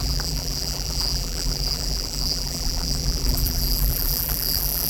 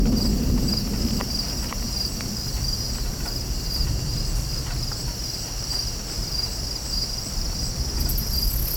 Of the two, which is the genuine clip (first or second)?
second